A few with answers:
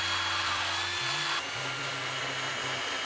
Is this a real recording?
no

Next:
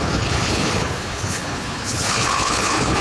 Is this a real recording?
no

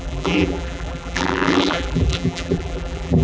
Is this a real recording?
no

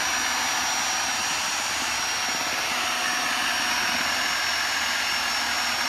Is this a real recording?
yes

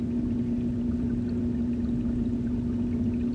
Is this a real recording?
yes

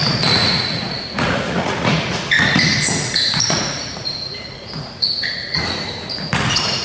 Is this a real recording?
no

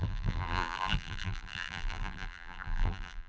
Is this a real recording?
no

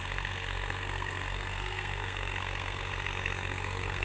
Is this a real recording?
no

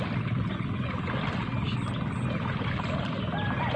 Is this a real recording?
yes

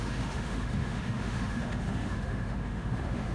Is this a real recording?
no